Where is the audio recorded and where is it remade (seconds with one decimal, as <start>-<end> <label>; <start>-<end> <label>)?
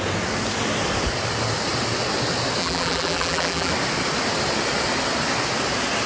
0.0-2.6 recorded; 2.6-3.7 remade; 3.7-6.1 recorded